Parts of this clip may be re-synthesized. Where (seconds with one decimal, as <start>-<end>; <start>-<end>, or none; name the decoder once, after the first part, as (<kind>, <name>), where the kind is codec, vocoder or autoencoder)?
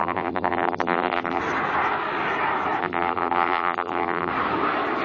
0.0-1.4 (vocoder, BigVGAN v2); 2.8-4.3